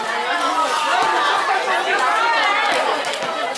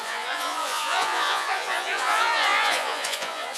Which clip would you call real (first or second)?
first